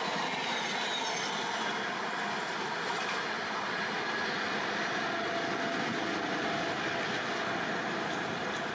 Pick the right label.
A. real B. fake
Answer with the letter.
A